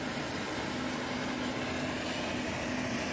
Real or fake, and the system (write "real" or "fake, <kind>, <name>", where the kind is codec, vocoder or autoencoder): real